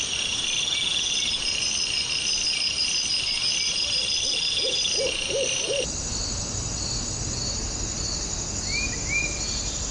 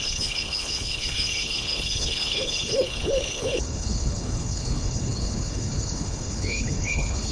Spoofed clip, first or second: second